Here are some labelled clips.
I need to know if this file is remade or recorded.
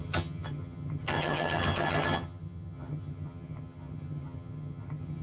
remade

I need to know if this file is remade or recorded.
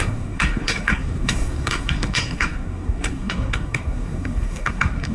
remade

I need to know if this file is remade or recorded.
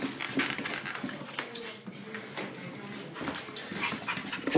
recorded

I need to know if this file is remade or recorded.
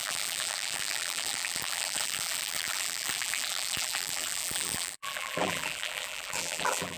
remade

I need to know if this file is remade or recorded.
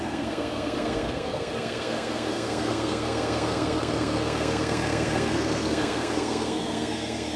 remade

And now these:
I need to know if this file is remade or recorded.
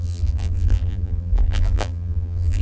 remade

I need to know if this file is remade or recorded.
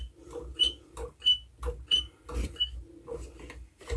recorded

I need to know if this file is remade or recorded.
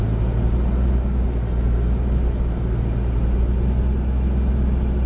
recorded